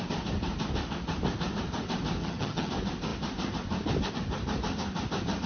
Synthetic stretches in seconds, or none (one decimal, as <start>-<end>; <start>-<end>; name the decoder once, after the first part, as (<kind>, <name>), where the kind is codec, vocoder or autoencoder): 2.2-2.7 (vocoder, HiFi-GAN)